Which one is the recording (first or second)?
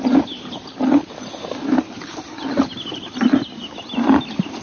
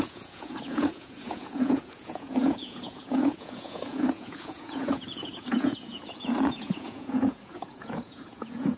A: first